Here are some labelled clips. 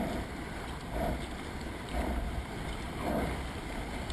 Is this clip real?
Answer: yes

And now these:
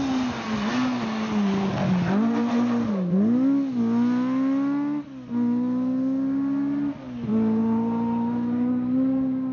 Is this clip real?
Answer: yes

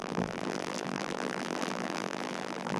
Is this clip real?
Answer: no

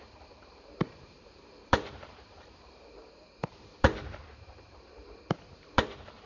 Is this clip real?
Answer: no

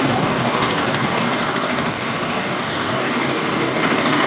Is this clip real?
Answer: no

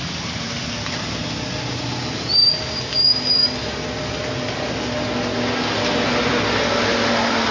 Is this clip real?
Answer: yes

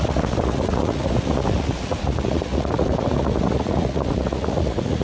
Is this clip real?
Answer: no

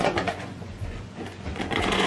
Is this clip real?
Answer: no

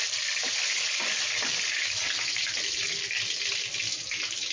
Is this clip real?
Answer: yes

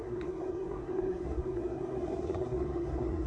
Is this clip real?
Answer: no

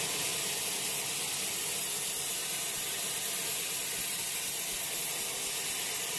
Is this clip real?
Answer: yes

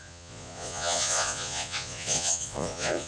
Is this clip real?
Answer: no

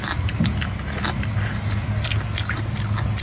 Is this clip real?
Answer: yes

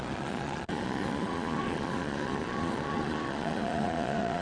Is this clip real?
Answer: no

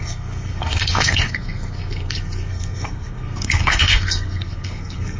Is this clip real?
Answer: no